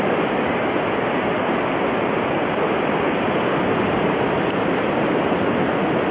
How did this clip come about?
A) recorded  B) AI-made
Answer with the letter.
A